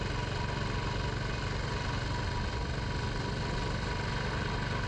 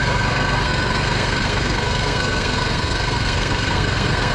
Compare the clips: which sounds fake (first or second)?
second